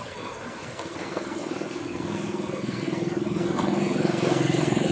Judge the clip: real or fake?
fake